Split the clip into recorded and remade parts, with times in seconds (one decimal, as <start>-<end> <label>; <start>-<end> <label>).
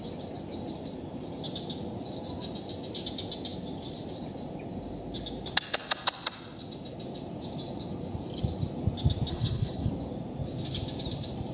0.0-9.3 recorded; 9.3-9.9 remade; 9.9-11.5 recorded